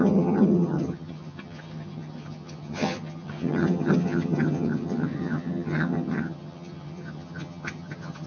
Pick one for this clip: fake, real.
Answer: fake